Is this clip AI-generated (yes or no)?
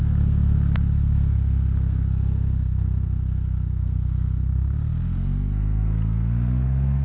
yes